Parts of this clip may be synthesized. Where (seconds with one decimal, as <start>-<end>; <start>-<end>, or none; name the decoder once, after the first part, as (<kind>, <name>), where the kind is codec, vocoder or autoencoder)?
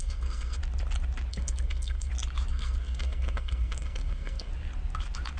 0.0-0.6 (codec, SNAC); 1.3-2.1; 2.5-4.5